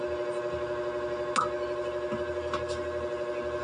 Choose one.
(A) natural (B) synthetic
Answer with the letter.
A